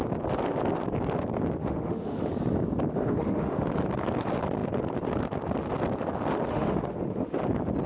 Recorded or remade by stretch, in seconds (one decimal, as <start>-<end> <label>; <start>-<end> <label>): 0.0-1.6 recorded; 1.6-2.3 remade; 2.3-2.9 recorded; 2.9-3.6 remade; 3.6-6.5 recorded; 6.5-7.4 remade; 7.4-7.9 recorded

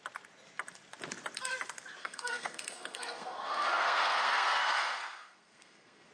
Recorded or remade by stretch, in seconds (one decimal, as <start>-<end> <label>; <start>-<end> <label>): 0.0-2.0 recorded; 2.0-6.1 remade

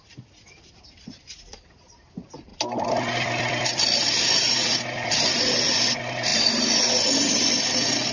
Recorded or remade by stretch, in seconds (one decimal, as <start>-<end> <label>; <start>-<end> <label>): 0.0-8.1 recorded

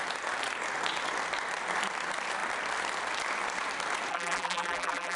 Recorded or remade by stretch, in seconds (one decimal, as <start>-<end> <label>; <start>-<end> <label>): 0.0-4.1 recorded; 4.1-5.2 remade

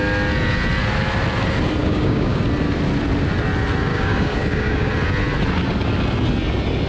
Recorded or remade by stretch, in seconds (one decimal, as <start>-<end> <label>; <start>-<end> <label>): 0.0-1.8 recorded; 1.8-2.4 remade; 2.4-3.9 recorded; 3.9-4.9 remade; 4.9-6.9 recorded

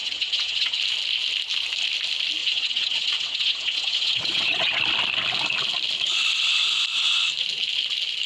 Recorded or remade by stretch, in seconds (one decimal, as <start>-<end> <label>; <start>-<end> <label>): 0.0-0.8 remade; 0.8-2.4 recorded; 2.4-4.8 remade; 4.8-8.3 recorded

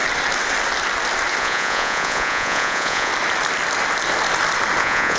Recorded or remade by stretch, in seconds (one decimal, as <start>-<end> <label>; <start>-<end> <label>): 0.0-1.4 recorded; 1.4-3.1 remade; 3.1-4.8 recorded; 4.8-5.2 remade

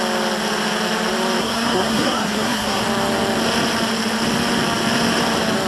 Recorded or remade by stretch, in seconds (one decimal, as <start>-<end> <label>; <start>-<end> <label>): 0.0-1.4 recorded; 1.4-2.8 remade; 2.8-5.7 recorded